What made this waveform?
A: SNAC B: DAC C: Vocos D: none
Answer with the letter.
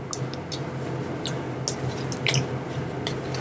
D